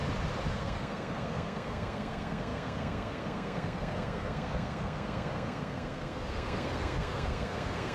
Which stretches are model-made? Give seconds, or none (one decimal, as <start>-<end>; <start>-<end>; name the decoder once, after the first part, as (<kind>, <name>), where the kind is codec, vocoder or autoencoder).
0.5-7.9 (codec, SNAC)